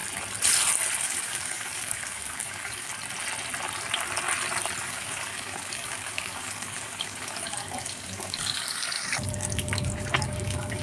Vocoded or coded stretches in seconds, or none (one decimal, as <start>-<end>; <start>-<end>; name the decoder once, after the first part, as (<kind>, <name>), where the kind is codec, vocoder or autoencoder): 1.0-2.9 (codec, DAC); 4.8-10.8